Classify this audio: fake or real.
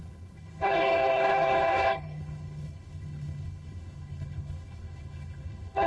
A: fake